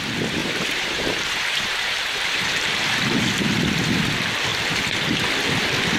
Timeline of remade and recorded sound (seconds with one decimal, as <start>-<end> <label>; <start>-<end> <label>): 0.0-0.4 recorded; 0.4-2.9 remade; 2.9-6.0 recorded